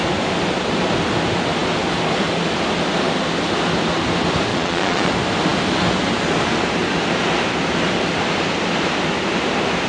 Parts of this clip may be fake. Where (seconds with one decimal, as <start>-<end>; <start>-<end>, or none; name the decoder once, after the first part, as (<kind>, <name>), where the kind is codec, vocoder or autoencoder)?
4.5-5.1 (vocoder, Vocos)